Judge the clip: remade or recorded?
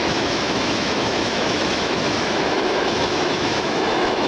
remade